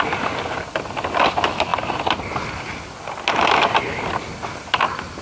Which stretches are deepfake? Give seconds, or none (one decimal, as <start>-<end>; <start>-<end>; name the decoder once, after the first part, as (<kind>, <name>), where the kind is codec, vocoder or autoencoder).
none